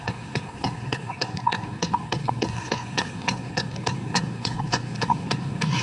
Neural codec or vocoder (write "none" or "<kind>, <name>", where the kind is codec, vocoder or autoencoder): codec, SNAC